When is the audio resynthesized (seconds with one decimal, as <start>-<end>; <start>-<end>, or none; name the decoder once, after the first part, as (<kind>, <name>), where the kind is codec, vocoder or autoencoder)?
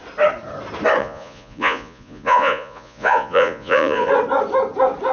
1.0-4.1 (vocoder, Vocos)